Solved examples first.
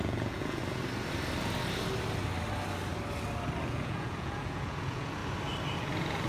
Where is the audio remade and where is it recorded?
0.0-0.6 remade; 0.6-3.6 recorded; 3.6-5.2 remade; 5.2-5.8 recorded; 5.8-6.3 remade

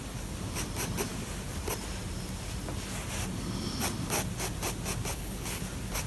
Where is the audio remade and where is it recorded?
0.0-5.1 recorded; 5.1-5.6 remade; 5.6-6.1 recorded

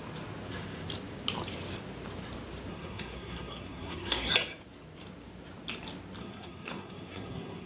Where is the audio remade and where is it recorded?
0.0-2.7 recorded; 2.7-4.3 remade; 4.3-6.2 recorded; 6.2-7.7 remade

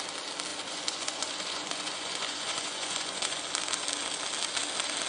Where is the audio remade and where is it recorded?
0.0-0.5 recorded; 0.5-3.4 remade; 3.4-5.1 recorded